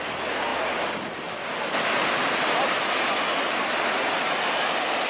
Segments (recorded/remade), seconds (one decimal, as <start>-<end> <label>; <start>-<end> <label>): 0.0-5.1 recorded